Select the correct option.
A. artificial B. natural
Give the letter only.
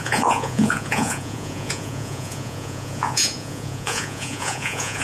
A